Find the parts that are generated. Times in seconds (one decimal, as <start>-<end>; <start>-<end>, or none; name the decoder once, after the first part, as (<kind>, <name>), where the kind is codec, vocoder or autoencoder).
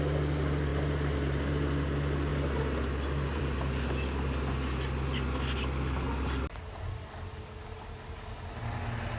none